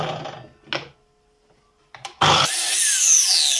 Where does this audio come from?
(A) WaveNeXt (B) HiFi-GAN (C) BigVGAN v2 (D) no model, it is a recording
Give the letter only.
D